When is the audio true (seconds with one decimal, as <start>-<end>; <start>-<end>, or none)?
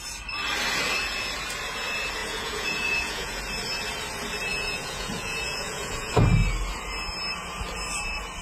0.0-2.2; 3.4-4.5; 6.1-8.4